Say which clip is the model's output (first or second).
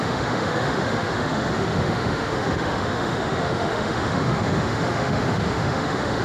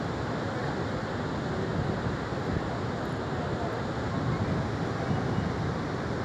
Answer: first